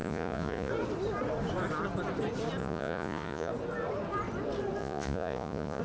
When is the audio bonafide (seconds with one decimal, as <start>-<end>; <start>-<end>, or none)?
0.7-2.6; 3.5-4.8